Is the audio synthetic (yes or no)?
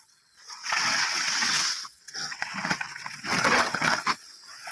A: yes